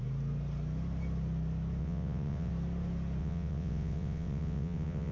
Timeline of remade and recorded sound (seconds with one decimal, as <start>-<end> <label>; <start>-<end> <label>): 0.0-1.8 recorded; 1.8-2.5 remade; 2.5-3.2 recorded; 3.2-5.1 remade